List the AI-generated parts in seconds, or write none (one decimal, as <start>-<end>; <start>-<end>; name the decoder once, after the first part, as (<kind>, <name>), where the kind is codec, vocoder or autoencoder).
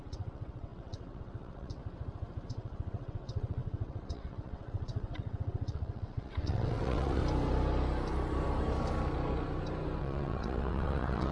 0.0-1.8 (vocoder, WaveNeXt); 2.5-7.2; 10.0-11.3